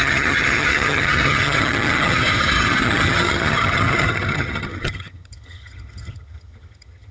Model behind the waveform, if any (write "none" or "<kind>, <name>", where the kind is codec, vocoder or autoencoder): vocoder, HiFi-GAN